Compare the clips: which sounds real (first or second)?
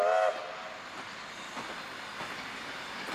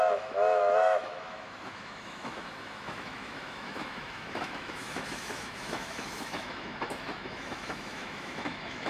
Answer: first